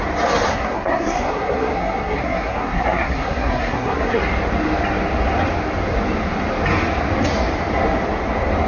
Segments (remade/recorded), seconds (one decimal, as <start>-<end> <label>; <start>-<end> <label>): 0.0-0.5 recorded; 0.5-4.2 remade; 4.2-8.7 recorded